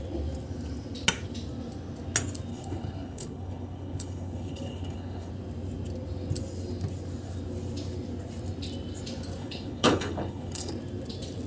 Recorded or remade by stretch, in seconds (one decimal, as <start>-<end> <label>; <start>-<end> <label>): 0.0-2.5 recorded; 2.5-5.3 remade; 5.3-9.4 recorded; 9.4-10.7 remade; 10.7-11.5 recorded